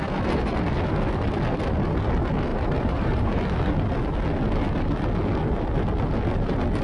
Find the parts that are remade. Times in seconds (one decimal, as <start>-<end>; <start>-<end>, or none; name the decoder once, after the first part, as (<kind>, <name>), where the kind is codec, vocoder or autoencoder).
2.5-3.4 (vocoder, BigVGAN v2)

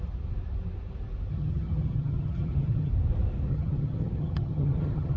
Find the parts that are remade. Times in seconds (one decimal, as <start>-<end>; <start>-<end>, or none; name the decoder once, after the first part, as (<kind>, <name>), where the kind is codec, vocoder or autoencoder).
1.3-2.9 (vocoder, HiFi-GAN); 3.5-5.2

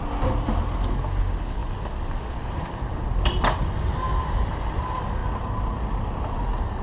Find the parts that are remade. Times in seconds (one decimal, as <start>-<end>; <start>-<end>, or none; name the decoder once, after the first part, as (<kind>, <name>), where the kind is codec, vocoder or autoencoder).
none

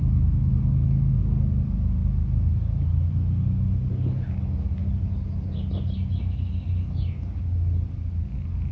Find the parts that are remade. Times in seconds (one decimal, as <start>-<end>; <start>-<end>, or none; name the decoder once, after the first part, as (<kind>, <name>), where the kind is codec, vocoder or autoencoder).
none

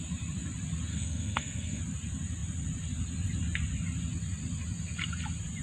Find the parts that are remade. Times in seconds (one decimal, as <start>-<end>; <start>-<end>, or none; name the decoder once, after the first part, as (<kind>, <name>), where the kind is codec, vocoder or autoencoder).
0.9-1.8 (codec, SNAC)